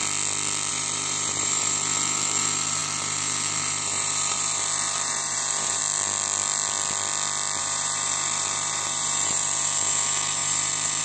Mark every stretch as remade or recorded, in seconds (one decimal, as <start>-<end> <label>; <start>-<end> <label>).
0.0-0.7 recorded; 0.7-5.8 remade; 5.8-7.6 recorded; 7.6-11.0 remade